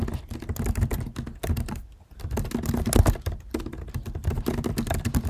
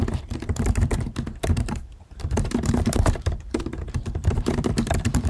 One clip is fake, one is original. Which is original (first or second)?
first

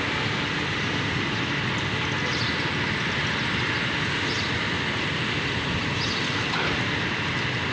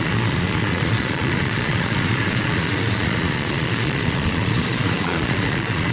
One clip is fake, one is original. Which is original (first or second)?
first